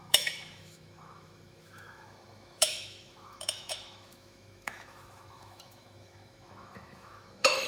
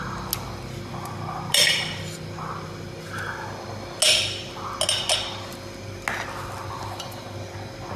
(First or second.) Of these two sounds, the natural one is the second